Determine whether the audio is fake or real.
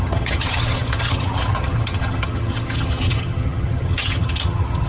fake